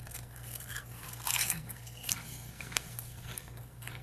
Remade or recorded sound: remade